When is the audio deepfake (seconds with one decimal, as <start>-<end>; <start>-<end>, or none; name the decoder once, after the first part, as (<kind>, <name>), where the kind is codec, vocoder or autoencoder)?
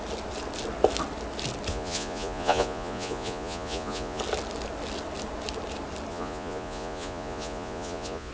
1.7-4.2 (vocoder, Vocos); 6.1-8.3